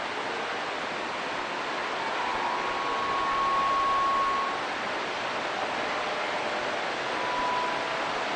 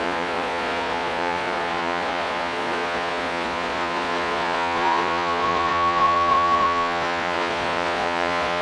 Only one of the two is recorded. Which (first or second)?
first